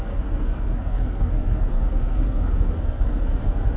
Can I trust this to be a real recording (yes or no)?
no